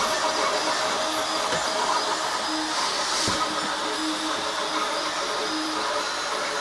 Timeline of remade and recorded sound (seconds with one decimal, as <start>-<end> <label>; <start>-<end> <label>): 0.0-6.6 recorded

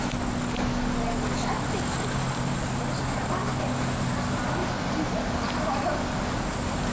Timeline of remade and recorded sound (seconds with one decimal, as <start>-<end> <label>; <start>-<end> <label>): 0.0-6.9 recorded

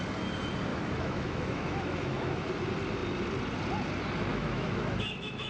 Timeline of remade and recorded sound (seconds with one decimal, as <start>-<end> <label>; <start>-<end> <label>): 0.0-0.7 recorded; 0.7-2.6 remade; 2.6-4.3 recorded; 4.3-5.5 remade

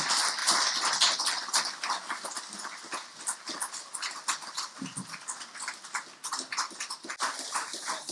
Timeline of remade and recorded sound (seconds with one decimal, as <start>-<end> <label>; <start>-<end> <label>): 0.0-8.1 recorded

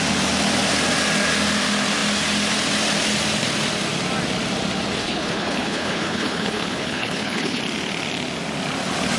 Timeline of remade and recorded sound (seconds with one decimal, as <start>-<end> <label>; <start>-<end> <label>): 0.0-5.0 recorded; 5.0-7.6 remade; 7.6-9.2 recorded

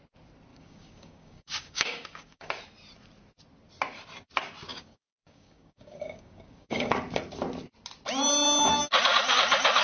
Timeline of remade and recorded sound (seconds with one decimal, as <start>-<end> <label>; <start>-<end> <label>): 0.0-0.5 recorded; 0.5-2.5 remade; 2.5-4.7 recorded; 4.7-6.9 remade; 6.9-9.8 recorded

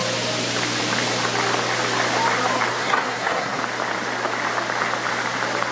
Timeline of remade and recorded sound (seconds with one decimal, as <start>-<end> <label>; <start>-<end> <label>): 0.0-2.7 recorded; 2.7-3.6 remade; 3.6-5.7 recorded

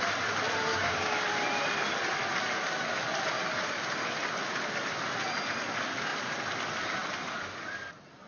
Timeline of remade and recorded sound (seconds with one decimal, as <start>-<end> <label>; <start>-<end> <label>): 0.0-0.7 recorded; 0.7-1.2 remade; 1.2-8.3 recorded